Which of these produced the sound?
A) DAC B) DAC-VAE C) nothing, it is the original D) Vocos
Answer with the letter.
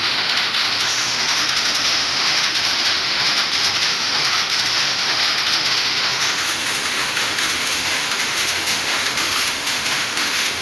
B